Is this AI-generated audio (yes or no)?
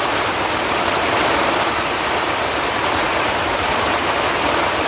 yes